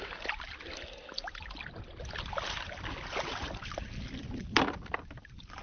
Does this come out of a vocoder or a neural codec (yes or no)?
no